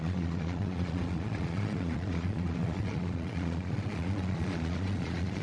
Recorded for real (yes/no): no